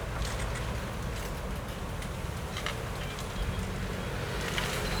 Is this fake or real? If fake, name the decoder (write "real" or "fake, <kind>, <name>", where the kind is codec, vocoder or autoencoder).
real